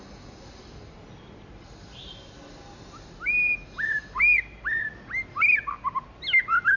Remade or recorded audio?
recorded